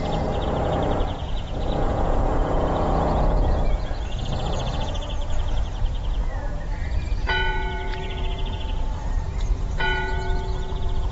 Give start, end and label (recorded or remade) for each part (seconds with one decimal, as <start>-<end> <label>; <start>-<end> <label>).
0.0-11.1 remade